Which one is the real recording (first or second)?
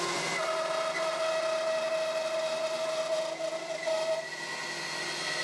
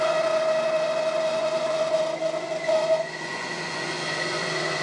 first